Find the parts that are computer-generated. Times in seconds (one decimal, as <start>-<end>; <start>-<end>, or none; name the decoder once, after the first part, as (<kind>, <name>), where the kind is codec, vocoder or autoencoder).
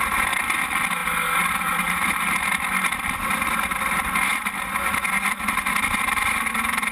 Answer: none